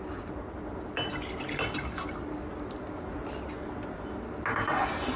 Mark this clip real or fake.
real